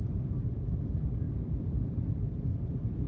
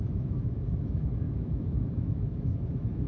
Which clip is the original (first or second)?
first